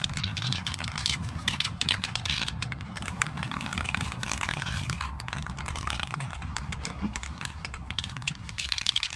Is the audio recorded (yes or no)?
no